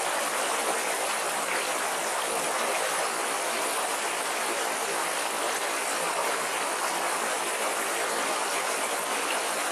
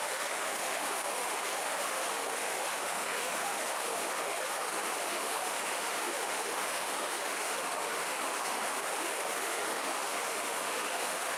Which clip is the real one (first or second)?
first